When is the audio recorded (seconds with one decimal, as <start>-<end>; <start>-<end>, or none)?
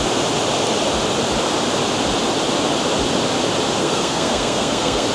0.0-3.8